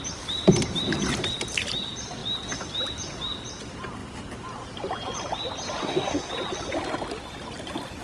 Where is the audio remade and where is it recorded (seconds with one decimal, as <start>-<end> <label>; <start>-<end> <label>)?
0.0-5.8 recorded; 5.8-6.3 remade; 6.3-8.0 recorded